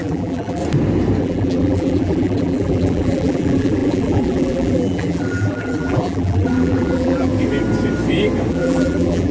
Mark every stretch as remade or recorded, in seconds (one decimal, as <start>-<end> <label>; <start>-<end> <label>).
0.0-0.6 remade; 0.6-1.2 recorded; 1.2-7.3 remade; 7.3-8.5 recorded; 8.5-9.3 remade